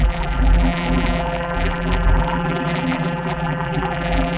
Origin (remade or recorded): remade